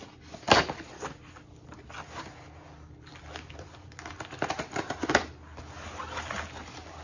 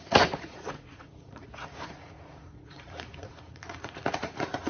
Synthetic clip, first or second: second